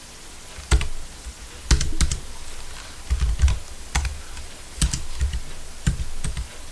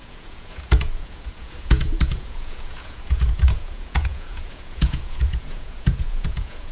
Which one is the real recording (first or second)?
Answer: first